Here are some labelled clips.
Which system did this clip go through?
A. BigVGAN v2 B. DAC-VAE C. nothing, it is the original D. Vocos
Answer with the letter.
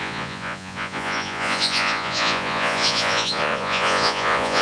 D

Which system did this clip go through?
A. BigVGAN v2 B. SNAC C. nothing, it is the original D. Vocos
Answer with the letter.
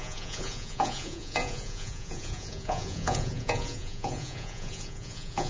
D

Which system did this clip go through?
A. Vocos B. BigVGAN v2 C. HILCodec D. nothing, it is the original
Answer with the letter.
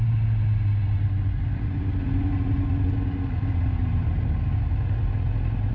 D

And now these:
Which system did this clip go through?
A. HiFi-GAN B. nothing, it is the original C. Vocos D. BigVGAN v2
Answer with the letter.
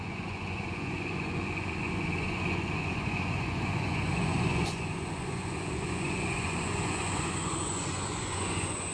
C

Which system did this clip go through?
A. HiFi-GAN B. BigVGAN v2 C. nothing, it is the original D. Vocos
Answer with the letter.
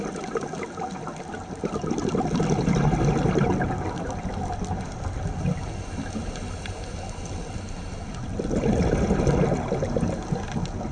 C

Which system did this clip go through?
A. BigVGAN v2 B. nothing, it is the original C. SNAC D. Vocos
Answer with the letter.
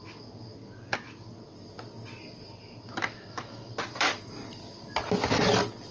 B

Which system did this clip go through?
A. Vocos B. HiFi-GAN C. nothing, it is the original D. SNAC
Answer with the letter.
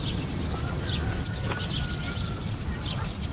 C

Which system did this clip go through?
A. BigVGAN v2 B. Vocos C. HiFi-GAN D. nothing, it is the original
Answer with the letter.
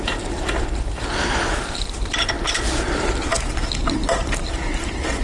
D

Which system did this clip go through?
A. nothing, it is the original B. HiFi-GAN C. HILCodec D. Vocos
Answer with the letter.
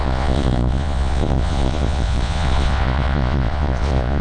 D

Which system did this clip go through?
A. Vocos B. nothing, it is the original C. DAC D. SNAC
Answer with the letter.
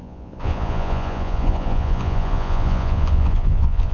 A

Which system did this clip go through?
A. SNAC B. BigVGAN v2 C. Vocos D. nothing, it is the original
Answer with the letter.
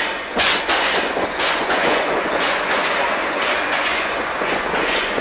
C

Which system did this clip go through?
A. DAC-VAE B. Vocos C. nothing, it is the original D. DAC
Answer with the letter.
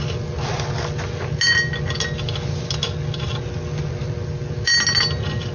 C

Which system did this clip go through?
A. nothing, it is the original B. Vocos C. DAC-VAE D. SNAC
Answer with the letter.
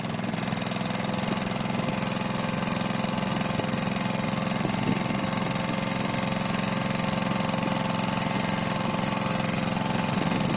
A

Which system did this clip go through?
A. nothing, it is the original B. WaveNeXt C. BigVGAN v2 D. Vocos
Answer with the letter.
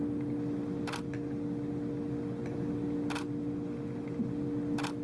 A